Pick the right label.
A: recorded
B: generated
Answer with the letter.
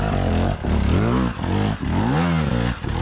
A